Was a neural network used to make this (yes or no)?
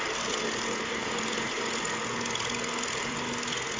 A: no